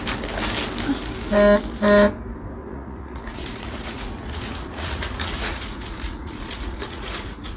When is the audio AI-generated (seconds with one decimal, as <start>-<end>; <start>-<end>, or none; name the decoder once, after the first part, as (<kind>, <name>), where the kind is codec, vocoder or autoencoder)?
2.6-7.6 (vocoder, Vocos)